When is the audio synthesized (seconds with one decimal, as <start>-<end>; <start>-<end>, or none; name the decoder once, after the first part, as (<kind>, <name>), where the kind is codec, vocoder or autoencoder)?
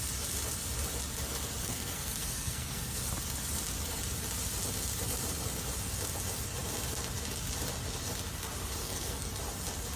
1.6-3.1 (codec, SNAC); 8.8-9.3